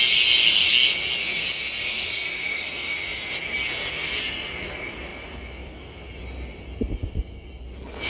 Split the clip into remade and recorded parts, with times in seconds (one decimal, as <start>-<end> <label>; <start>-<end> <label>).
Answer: 0.0-8.1 recorded